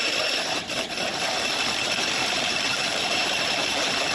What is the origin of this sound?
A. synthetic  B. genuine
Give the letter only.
A